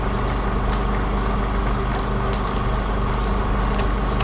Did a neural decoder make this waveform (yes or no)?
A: no